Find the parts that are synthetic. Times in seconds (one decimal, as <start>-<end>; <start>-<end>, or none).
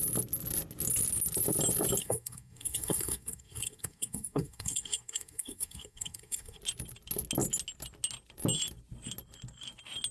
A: 2.0-6.6